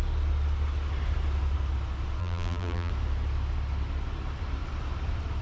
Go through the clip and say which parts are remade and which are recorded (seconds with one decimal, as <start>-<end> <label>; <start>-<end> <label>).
0.0-2.2 recorded; 2.2-2.9 remade; 2.9-5.4 recorded